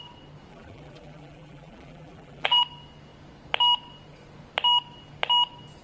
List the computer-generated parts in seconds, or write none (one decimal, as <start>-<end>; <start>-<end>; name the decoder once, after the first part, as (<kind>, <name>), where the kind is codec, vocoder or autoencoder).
0.5-2.6 (vocoder, BigVGAN v2)